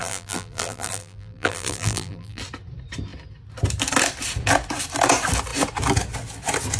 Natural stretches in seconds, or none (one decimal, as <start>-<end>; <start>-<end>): 2.4-6.8

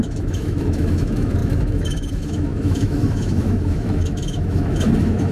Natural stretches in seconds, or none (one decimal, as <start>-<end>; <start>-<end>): none

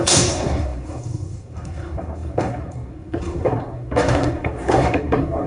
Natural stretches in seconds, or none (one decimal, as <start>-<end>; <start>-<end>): none

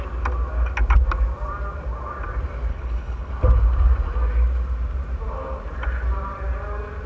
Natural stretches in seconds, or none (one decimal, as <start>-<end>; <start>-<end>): 0.0-2.7; 3.3-7.1